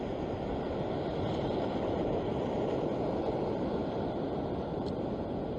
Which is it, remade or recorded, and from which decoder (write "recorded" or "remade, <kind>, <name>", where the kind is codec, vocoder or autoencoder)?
remade, vocoder, BigVGAN v2